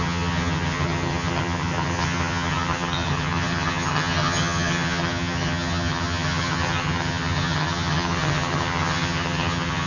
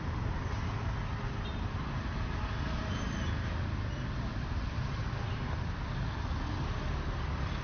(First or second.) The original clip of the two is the second